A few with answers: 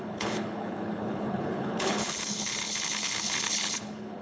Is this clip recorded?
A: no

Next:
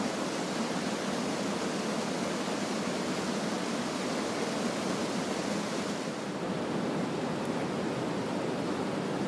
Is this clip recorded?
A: yes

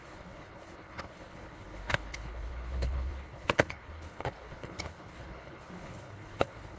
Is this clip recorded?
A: no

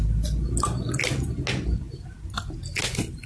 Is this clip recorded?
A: yes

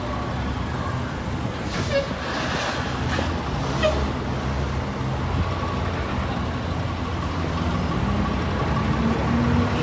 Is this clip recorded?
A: yes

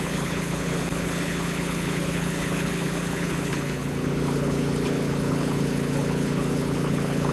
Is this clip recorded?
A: no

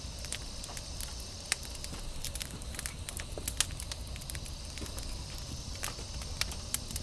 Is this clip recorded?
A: yes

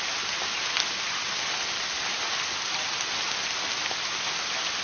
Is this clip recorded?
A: yes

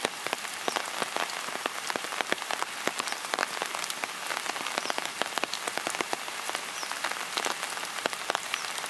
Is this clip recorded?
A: yes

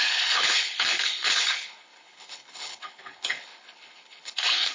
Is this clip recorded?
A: no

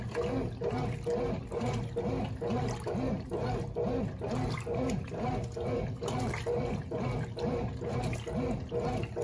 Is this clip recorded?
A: yes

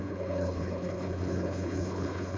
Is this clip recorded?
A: no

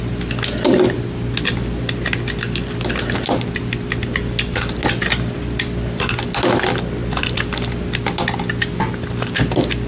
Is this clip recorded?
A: yes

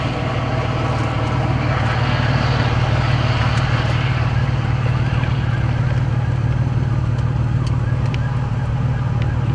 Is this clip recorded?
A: yes